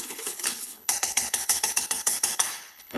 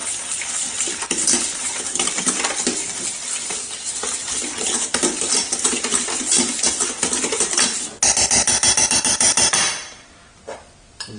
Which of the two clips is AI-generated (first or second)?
first